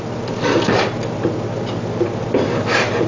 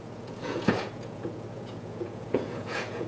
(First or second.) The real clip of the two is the first